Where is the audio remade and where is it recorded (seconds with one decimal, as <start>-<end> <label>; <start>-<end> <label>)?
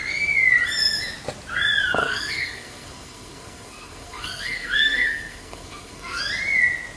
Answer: 0.0-2.0 recorded; 2.0-6.2 remade; 6.2-7.0 recorded